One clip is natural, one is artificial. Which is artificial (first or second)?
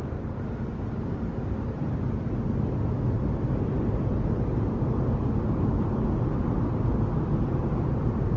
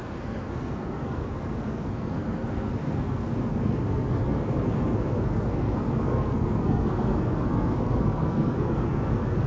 second